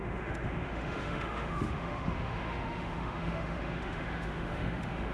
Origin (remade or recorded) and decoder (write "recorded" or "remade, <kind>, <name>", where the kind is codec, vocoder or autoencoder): remade, autoencoder, DAC-VAE